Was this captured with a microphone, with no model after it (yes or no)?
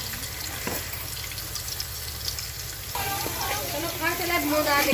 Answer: yes